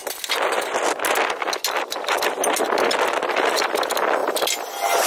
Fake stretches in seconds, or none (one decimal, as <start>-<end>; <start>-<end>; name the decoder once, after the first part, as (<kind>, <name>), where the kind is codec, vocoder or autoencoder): none